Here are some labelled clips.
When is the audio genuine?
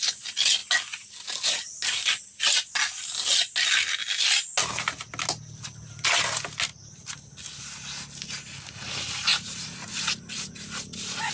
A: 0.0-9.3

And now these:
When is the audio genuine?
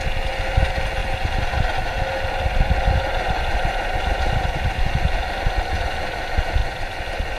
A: 0.0-7.4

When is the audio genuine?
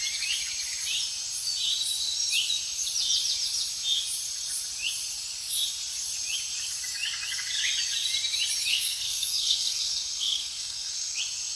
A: 0.0-8.7; 11.2-11.6